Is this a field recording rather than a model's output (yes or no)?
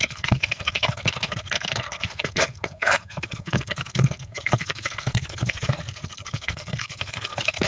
no